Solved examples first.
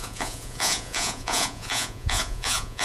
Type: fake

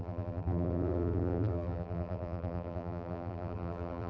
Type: fake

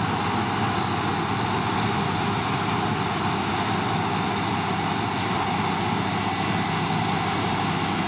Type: real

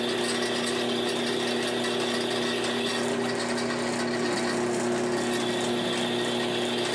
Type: real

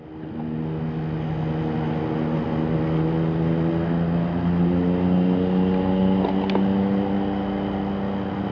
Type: real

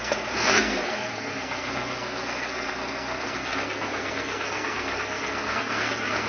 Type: fake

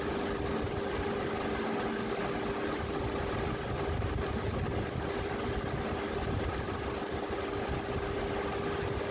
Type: real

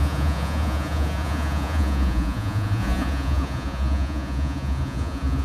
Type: fake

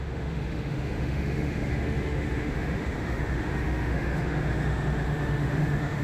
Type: fake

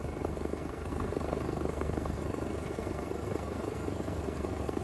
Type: fake